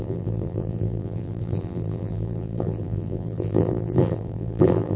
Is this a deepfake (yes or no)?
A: yes